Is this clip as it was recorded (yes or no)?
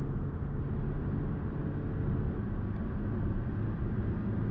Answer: yes